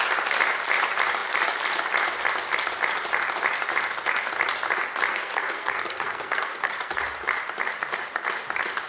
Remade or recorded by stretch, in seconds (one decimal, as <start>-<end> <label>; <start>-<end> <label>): 0.0-5.1 recorded; 5.1-7.0 remade; 7.0-8.9 recorded